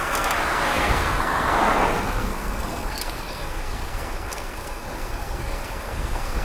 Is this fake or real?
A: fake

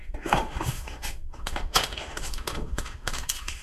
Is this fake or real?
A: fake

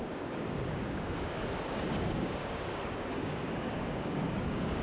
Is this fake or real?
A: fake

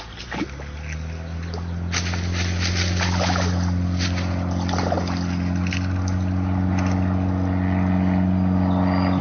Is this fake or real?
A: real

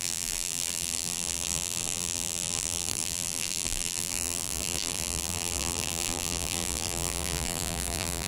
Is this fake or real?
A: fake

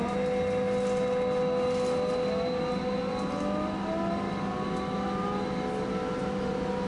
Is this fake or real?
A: real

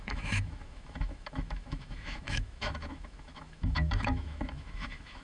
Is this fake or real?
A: fake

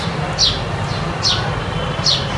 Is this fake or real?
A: real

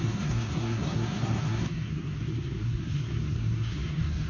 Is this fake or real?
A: fake